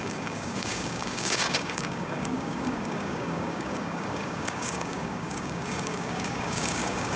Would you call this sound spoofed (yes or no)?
yes